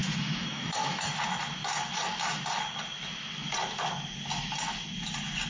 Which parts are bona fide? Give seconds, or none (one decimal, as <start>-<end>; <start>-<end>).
1.1-5.5